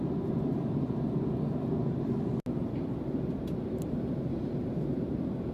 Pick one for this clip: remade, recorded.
recorded